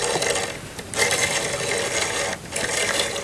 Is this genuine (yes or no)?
yes